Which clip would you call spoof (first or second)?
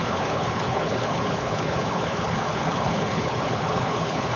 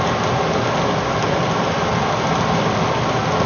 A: first